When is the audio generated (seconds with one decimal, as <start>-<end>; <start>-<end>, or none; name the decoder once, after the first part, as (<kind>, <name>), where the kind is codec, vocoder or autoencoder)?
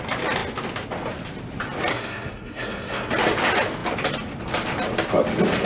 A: 1.9-3.1 (codec, SNAC)